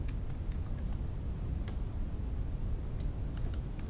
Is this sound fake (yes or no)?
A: no